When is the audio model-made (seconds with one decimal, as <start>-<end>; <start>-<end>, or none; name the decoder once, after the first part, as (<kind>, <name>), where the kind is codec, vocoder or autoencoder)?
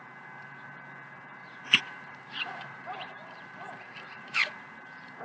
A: 1.4-4.5 (vocoder, BigVGAN v2)